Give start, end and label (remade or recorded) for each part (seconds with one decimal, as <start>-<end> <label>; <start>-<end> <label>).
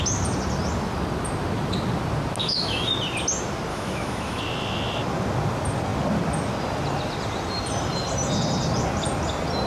0.0-2.4 recorded; 2.4-2.9 remade; 2.9-3.7 recorded; 3.7-4.4 remade; 4.4-9.7 recorded